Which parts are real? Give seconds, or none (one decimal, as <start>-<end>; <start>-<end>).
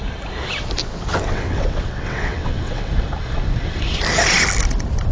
0.0-0.8; 2.9-5.1